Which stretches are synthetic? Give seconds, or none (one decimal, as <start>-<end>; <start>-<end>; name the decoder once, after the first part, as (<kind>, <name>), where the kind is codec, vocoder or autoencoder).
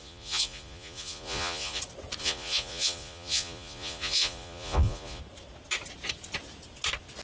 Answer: 0.0-1.8 (vocoder, Vocos); 2.2-5.2